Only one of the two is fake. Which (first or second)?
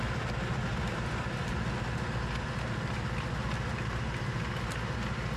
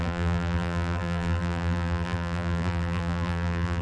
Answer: second